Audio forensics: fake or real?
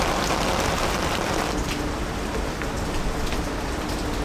real